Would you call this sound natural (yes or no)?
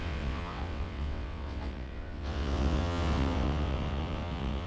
no